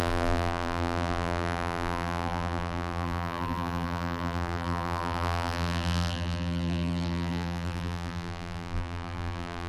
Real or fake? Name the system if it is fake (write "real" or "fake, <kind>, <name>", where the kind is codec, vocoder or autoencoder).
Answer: fake, vocoder, BigVGAN v2